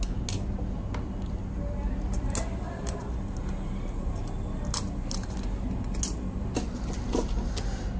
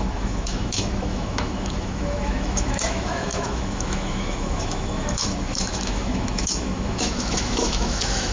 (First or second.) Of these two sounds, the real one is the first